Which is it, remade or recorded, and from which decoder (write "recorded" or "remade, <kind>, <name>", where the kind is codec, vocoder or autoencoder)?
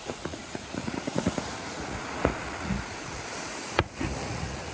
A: remade, vocoder, Vocos